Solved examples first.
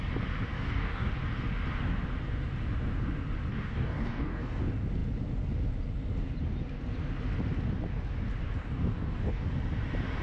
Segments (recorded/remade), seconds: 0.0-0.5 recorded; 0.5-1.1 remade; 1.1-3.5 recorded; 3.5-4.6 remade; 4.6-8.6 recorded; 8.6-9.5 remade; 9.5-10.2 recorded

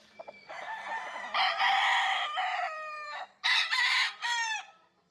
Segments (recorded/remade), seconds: 0.0-2.5 recorded; 2.5-3.8 remade; 3.8-5.1 recorded

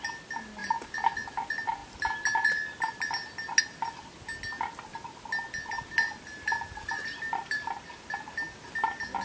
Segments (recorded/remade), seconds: 0.0-6.3 recorded; 6.3-7.7 remade; 7.7-9.2 recorded

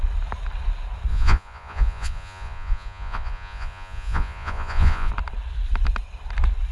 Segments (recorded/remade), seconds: 0.0-1.1 recorded; 1.1-5.1 remade; 5.1-6.7 recorded

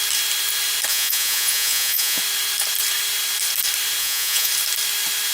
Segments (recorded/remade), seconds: 0.0-0.9 recorded; 0.9-2.2 remade; 2.2-4.0 recorded; 4.0-4.5 remade; 4.5-5.3 recorded